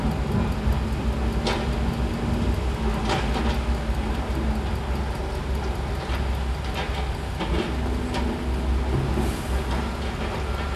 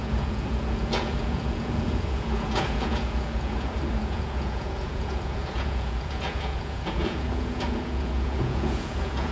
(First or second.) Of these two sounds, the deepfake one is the second